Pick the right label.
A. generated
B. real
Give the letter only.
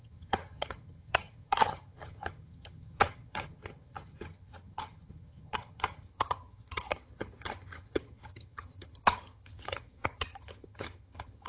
A